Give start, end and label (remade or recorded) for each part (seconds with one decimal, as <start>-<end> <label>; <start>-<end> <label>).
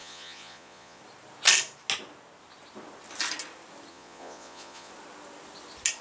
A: 0.0-1.0 remade; 1.0-3.9 recorded; 3.9-4.9 remade; 4.9-6.0 recorded